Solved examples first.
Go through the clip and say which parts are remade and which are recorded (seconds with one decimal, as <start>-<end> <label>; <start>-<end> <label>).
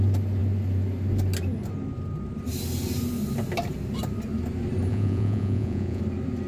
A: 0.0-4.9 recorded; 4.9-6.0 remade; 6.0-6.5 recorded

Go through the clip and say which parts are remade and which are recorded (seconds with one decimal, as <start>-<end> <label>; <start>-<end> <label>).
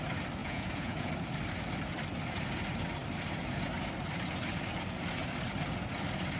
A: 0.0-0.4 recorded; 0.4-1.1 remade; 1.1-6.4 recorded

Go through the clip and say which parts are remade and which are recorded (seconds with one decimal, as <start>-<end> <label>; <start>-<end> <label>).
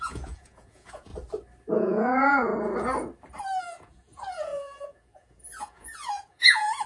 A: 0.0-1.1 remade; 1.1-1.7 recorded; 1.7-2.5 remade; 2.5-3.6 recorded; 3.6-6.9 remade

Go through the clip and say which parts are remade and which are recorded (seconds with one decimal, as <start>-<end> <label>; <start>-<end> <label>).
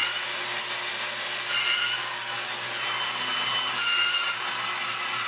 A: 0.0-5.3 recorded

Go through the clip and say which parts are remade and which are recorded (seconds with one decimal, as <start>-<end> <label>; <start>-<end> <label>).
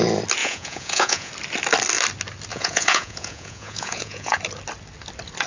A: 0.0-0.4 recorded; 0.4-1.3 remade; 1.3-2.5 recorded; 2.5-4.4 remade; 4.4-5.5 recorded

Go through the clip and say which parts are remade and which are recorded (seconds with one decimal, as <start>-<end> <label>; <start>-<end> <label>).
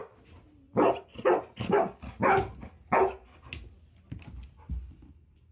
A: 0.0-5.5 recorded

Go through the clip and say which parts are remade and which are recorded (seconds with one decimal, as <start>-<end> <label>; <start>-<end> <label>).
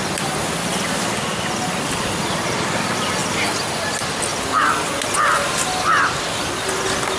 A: 0.0-7.2 recorded